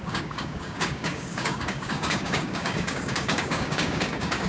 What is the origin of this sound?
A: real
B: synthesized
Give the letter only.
B